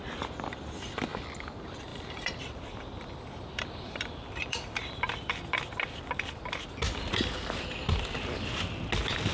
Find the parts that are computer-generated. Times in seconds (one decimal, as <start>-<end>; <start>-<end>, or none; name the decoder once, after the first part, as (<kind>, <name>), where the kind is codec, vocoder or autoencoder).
1.9-5.3 (vocoder, BigVGAN v2)